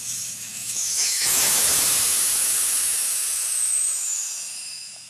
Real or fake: fake